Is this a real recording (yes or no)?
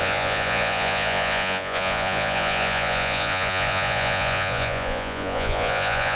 no